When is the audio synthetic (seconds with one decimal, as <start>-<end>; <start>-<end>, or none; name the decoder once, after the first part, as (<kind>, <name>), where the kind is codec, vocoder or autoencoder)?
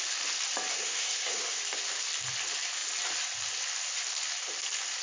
0.7-1.6 (codec, SNAC)